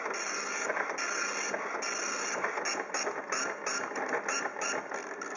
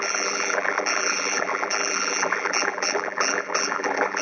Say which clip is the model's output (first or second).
second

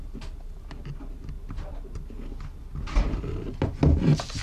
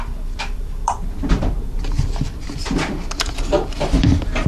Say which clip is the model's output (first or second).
second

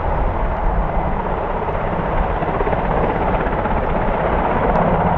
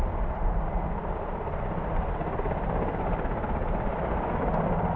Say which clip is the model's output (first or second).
first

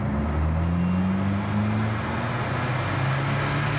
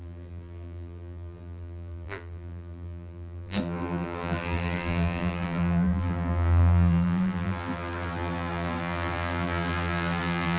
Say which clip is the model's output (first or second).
second